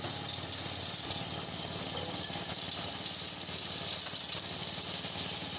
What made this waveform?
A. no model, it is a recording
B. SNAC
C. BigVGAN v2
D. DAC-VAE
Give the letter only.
A